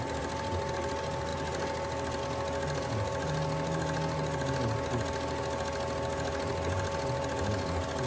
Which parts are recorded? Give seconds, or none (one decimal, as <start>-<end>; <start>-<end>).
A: 0.0-8.1